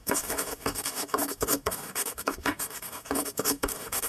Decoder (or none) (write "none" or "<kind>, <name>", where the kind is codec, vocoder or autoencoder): codec, DAC